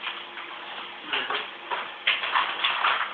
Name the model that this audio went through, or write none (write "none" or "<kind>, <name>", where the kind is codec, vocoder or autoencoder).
none